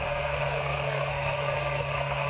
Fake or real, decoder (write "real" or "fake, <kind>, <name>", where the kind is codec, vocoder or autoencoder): fake, codec, SNAC